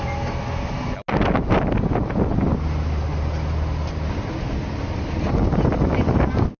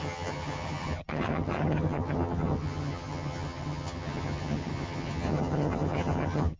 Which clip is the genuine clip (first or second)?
first